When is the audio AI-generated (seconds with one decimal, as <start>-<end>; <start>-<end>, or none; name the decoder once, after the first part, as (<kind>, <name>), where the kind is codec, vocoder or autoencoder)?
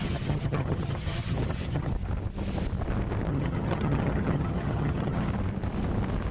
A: 0.0-1.9 (vocoder, HiFi-GAN); 3.3-5.3